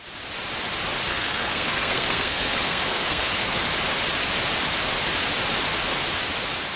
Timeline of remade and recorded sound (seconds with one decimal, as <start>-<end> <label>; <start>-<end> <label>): 0.0-1.1 recorded; 1.1-3.6 remade; 3.6-6.8 recorded